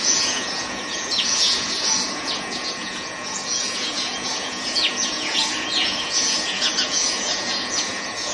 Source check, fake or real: fake